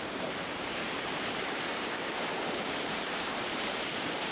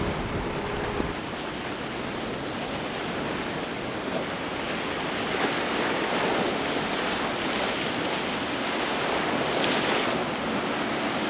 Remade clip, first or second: first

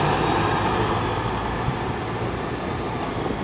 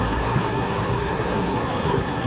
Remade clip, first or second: second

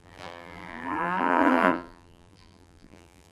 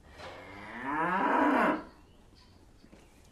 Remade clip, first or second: first